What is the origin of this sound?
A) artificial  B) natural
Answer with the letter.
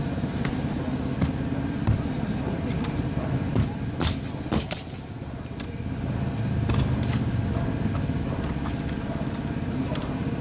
B